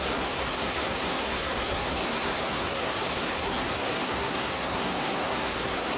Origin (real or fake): fake